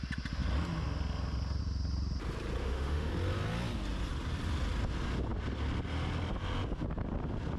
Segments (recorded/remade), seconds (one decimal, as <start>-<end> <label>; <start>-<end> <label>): 0.0-2.6 recorded; 2.6-3.1 remade; 3.1-7.6 recorded